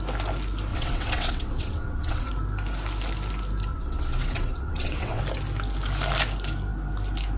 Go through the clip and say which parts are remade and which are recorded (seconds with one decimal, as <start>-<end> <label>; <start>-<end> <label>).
0.0-0.7 recorded; 0.7-2.3 remade; 2.3-3.7 recorded; 3.7-5.2 remade; 5.2-7.4 recorded